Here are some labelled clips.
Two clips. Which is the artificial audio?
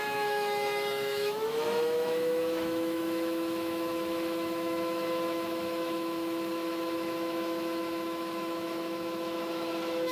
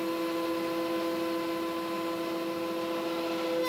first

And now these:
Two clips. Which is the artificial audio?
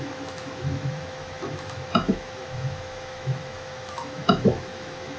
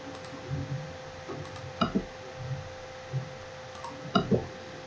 first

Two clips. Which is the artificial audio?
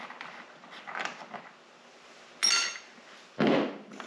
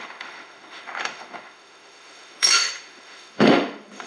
second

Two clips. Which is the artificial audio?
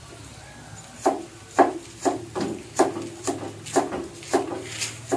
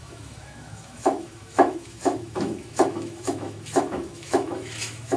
second